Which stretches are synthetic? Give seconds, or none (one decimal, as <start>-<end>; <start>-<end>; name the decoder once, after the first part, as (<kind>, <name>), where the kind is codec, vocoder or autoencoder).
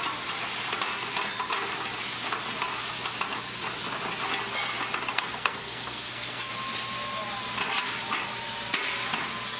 5.1-6.5 (codec, SNAC)